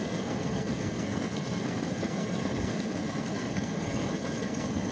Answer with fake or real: fake